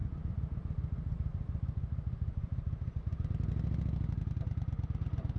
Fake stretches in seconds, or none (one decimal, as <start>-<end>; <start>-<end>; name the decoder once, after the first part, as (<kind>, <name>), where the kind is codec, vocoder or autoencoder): 0.0-3.0 (vocoder, BigVGAN v2)